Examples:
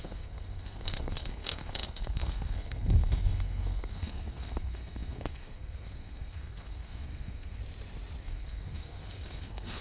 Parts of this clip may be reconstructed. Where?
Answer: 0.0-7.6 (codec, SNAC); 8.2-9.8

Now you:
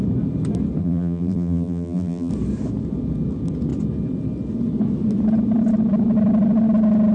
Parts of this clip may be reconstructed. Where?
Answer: 0.8-2.3 (vocoder, BigVGAN v2)